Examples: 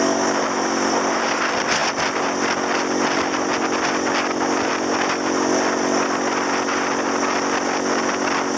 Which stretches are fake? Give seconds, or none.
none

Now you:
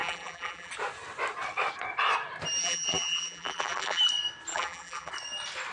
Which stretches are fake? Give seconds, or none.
0.0-0.7 (vocoder, BigVGAN v2); 2.6-4.0; 4.5-5.1

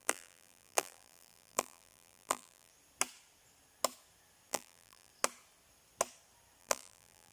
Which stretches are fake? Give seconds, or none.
0.0-2.7 (vocoder, BigVGAN v2); 4.5-5.1; 6.6-7.3

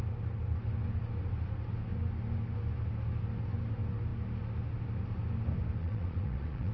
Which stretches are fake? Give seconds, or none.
5.8-6.7 (vocoder, Vocos)

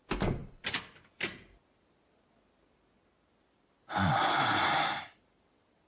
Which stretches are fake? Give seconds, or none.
none

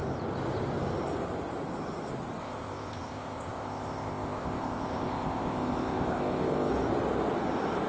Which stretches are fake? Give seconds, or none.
2.4-6.7 (codec, ZipCodec)